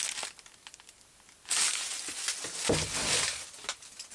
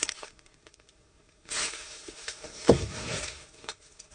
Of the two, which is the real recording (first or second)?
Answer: first